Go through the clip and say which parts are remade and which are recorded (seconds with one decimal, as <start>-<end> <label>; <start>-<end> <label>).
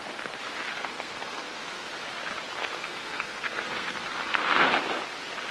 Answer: 0.0-0.7 recorded; 0.7-1.9 remade; 1.9-2.6 recorded; 2.6-4.7 remade; 4.7-5.5 recorded